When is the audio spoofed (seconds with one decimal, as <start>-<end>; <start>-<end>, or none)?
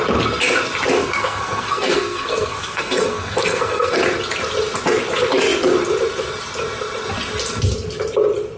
1.0-4.0